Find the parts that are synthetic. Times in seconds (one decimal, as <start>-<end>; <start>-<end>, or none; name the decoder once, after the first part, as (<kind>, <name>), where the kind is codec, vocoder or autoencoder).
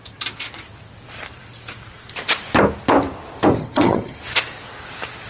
3.6-4.2 (vocoder, HiFi-GAN)